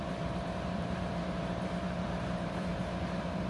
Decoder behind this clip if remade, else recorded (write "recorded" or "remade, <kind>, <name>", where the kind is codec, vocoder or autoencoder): remade, vocoder, BigVGAN v2